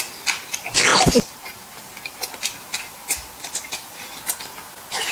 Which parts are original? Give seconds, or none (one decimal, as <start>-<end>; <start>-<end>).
0.0-0.9; 2.3-5.1